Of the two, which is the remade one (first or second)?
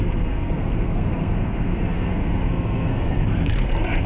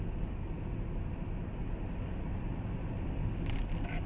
first